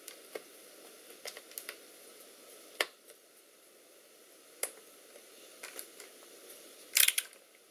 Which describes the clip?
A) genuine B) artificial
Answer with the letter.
A